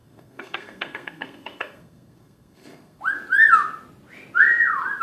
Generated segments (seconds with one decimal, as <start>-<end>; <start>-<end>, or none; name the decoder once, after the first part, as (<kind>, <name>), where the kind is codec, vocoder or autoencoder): 0.0-3.0 (codec, SNAC)

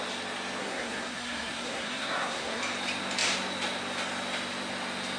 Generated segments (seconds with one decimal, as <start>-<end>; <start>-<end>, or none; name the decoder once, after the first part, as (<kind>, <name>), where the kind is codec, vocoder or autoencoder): 0.6-2.6 (codec, SNAC)

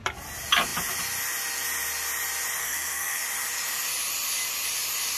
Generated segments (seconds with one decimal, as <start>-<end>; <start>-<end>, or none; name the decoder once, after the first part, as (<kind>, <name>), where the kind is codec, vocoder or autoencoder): 2.6-3.2 (codec, SNAC)

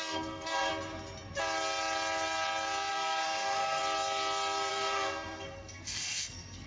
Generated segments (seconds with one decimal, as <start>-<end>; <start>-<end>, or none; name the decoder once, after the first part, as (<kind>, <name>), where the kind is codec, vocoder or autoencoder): 0.0-0.7 (codec, SNAC); 2.9-3.8; 4.7-6.7

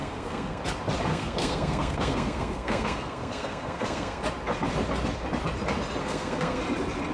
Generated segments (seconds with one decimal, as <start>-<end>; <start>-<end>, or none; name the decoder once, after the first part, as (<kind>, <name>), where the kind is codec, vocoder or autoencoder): 0.0-0.6 (codec, SNAC); 1.1-4.2; 6.0-6.6

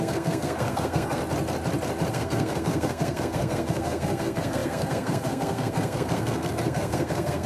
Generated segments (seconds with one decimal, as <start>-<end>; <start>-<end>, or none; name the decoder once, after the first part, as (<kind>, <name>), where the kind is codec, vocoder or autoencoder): 0.0-1.2 (codec, SNAC); 2.1-7.5

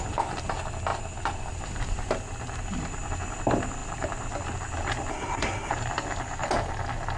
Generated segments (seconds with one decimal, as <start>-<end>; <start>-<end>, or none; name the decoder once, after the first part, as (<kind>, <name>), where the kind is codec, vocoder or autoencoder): 5.1-5.7 (codec, SNAC)

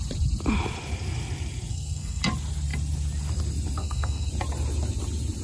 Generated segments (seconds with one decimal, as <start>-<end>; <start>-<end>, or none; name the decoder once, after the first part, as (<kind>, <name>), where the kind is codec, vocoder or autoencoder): 1.7-2.2 (codec, SNAC); 3.8-4.3